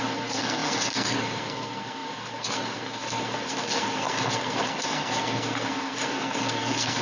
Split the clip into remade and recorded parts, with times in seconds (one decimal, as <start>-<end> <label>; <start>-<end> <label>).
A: 0.0-7.0 remade

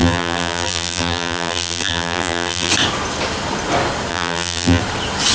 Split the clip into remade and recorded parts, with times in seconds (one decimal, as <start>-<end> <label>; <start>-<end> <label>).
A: 0.0-2.7 remade; 2.7-4.1 recorded; 4.1-4.8 remade; 4.8-5.3 recorded

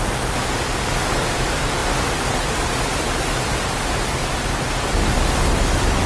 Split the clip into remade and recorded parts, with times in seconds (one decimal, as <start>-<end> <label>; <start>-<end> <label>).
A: 0.0-1.8 remade; 1.8-5.5 recorded; 5.5-6.1 remade

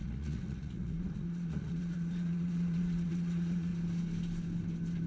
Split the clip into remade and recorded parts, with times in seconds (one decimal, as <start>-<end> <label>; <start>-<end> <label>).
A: 0.0-3.7 remade; 3.7-5.1 recorded

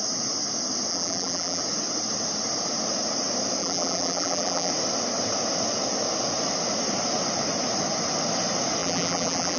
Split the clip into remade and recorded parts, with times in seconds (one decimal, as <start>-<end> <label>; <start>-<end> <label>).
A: 0.0-0.9 recorded; 0.9-1.6 remade; 1.6-3.6 recorded; 3.6-4.7 remade; 4.7-8.8 recorded; 8.8-9.6 remade

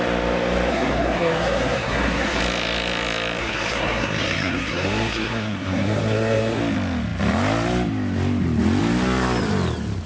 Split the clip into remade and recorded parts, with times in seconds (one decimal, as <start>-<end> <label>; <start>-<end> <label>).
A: 0.0-0.7 recorded; 0.7-2.4 remade; 2.4-3.4 recorded; 3.4-6.6 remade; 6.6-10.1 recorded

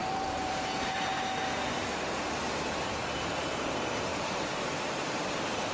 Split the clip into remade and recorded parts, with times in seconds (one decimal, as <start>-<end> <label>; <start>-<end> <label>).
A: 0.0-1.1 remade; 1.1-3.4 recorded; 3.4-5.7 remade

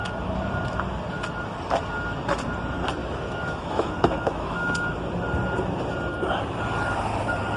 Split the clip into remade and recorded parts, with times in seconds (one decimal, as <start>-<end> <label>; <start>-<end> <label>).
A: 0.0-3.0 recorded; 3.0-4.9 remade; 4.9-7.6 recorded